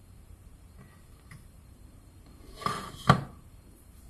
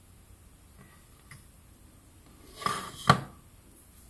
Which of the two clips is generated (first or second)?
first